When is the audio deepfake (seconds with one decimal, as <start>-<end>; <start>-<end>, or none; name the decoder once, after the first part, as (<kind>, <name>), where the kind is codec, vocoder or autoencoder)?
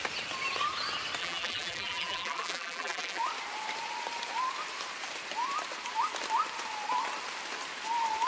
1.2-3.2 (vocoder, BigVGAN v2)